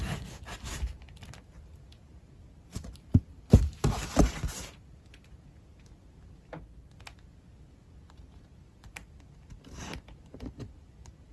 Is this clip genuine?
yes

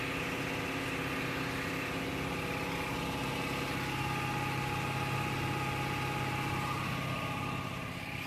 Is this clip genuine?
yes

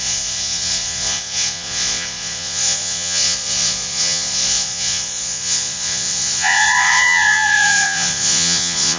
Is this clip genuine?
no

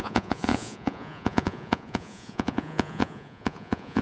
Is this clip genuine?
no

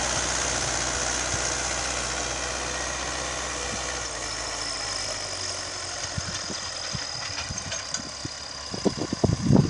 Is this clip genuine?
yes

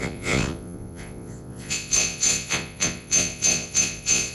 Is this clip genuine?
no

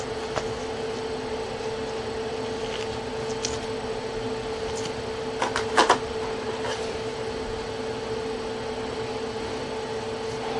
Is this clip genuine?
yes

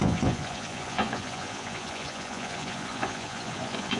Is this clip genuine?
no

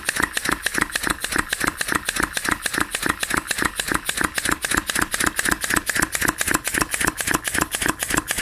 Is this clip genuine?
yes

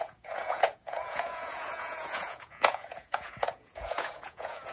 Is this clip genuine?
no